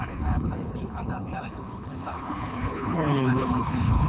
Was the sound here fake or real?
fake